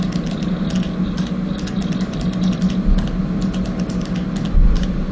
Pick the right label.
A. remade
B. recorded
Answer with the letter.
B